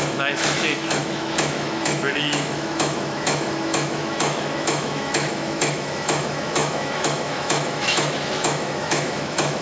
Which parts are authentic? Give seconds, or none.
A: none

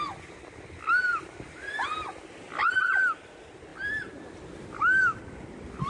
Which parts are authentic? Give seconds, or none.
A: 0.0-5.9

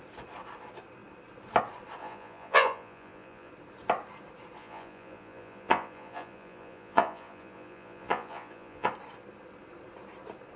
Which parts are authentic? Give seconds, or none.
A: 0.0-2.0; 3.5-4.6; 8.9-10.6